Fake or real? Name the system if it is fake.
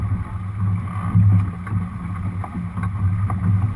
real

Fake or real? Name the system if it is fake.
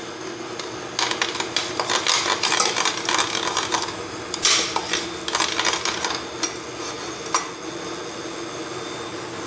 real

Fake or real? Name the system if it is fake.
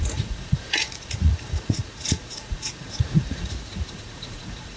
fake, vocoder, Vocos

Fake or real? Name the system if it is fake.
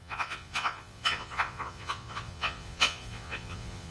fake, vocoder, Vocos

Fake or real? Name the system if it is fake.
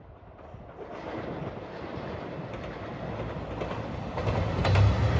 real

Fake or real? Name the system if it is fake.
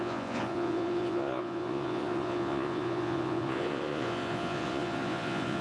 fake, vocoder, Vocos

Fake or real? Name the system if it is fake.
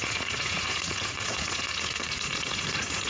fake, vocoder, Vocos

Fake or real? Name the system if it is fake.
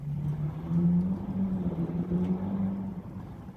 real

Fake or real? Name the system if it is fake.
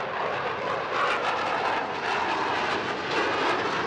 real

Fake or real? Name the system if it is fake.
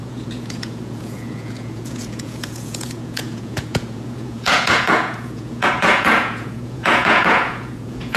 fake, vocoder, Vocos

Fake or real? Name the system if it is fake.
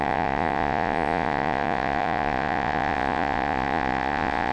fake, vocoder, Vocos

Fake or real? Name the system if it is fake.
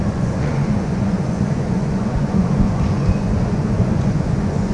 fake, vocoder, Vocos